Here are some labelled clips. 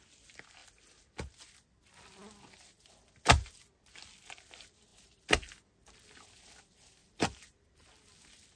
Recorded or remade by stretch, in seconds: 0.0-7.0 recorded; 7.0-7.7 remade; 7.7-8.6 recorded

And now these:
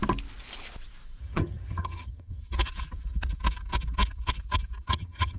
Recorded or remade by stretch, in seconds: 0.0-1.2 recorded; 1.2-2.4 remade; 2.4-4.9 recorded; 4.9-5.4 remade

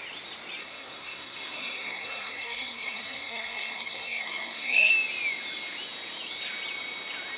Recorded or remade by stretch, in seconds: 0.0-0.6 recorded; 0.6-4.9 remade; 4.9-7.4 recorded

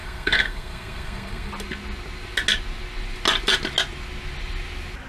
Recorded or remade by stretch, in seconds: 0.0-1.5 remade; 1.5-5.1 recorded

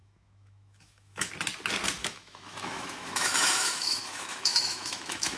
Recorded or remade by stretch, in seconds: 0.0-1.3 remade; 1.3-2.0 recorded; 2.0-5.4 remade

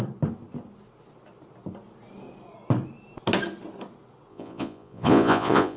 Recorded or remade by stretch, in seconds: 0.0-4.3 recorded; 4.3-5.8 remade